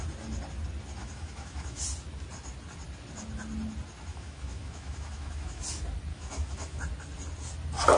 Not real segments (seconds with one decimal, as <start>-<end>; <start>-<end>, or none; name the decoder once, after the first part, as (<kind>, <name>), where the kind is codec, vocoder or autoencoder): 1.0-1.8 (autoencoder, DAC-VAE); 4.1-5.6; 6.1-6.8